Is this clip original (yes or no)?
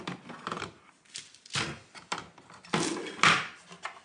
yes